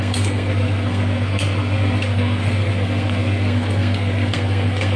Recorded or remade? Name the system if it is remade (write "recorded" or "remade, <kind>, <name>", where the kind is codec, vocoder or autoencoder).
remade, codec, SNAC